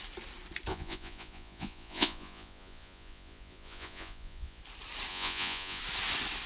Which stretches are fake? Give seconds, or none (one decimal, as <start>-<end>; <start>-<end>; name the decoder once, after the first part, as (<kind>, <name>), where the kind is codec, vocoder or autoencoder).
0.7-4.6 (vocoder, Vocos); 5.1-5.8